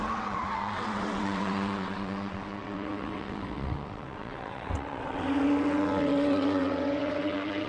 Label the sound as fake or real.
fake